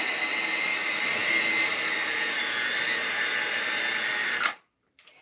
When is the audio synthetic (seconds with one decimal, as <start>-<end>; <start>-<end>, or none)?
4.2-5.2